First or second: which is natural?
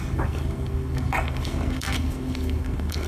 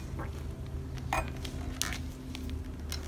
second